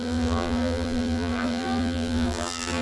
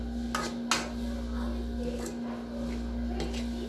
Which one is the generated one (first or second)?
first